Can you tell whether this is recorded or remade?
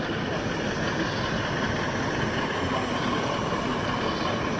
recorded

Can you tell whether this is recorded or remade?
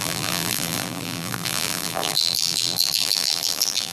remade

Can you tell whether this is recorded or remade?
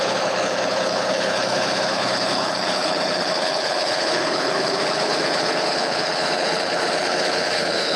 remade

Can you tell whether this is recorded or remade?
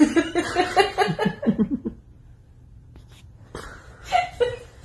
recorded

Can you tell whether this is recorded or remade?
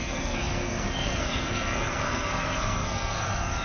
remade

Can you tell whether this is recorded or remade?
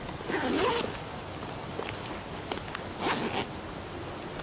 recorded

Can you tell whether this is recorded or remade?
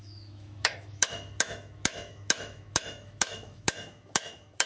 remade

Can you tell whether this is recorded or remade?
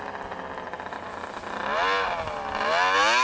recorded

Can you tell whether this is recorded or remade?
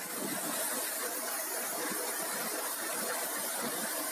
recorded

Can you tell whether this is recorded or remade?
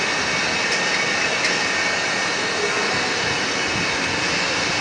recorded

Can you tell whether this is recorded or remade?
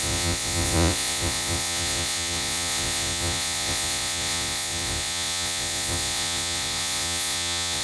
remade